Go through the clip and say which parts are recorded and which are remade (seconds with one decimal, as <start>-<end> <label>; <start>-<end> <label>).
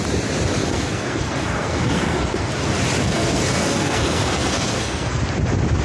0.0-0.6 recorded; 0.6-2.5 remade; 2.5-3.0 recorded; 3.0-5.2 remade; 5.2-5.8 recorded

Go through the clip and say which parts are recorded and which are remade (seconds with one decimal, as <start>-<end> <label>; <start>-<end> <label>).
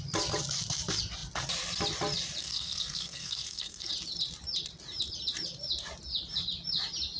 0.0-2.4 recorded; 2.4-3.9 remade; 3.9-7.2 recorded